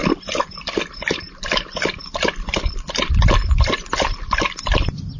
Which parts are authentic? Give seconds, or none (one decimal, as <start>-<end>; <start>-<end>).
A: 0.0-5.2